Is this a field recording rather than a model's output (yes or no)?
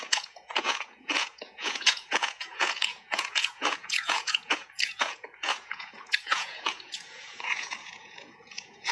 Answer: no